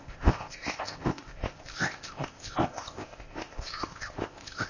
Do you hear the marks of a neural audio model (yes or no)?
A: yes